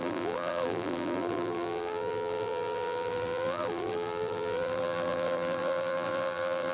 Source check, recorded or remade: remade